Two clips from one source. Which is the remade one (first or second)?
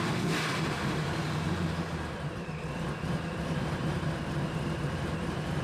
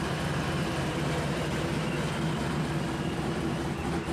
first